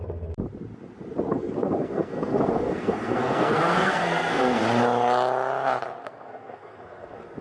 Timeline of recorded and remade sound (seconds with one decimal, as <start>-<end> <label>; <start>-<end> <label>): 0.0-1.3 recorded; 1.3-4.6 remade; 4.6-6.0 recorded; 6.0-7.4 remade